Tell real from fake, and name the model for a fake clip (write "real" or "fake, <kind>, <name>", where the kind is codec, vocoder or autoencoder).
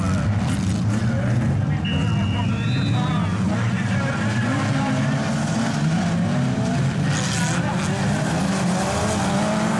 real